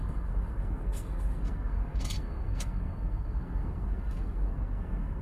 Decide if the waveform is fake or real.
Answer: fake